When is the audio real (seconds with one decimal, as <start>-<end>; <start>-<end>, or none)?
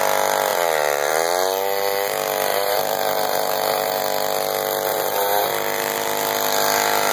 0.0-2.5; 4.0-4.9; 5.5-7.1